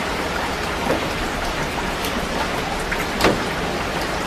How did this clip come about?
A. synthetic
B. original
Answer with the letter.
A